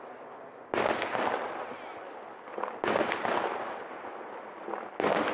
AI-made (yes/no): no